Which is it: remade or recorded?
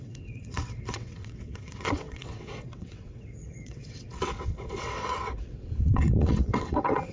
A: remade